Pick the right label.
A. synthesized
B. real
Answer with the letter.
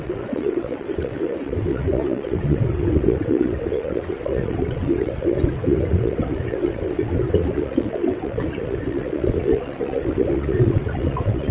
A